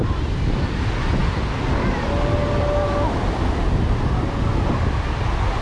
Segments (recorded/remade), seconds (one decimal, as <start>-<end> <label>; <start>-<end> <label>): 0.0-5.6 recorded